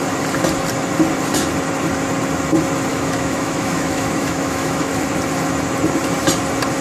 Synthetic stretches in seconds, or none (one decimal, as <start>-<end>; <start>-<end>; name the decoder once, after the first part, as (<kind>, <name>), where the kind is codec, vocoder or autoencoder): 2.9-4.9 (autoencoder, DAC-VAE)